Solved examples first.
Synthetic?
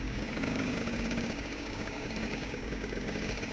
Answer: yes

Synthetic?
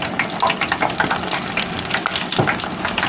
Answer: no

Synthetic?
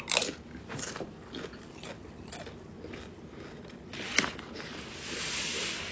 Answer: no